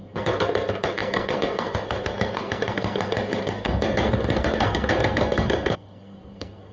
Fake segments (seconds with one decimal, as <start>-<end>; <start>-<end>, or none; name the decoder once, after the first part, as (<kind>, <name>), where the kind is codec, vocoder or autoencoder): 0.0-6.7 (codec, SNAC)